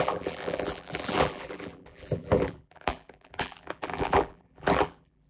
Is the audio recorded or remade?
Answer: remade